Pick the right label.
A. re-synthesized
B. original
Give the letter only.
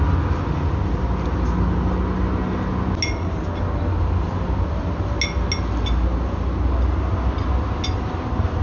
B